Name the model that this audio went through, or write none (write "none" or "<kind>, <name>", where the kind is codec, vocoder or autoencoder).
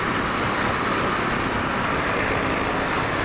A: none